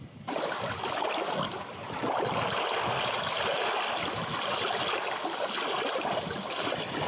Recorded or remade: recorded